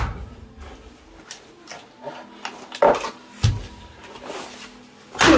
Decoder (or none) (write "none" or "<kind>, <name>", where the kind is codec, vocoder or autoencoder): none